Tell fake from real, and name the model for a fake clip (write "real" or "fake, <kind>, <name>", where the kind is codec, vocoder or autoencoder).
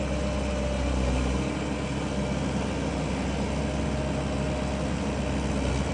real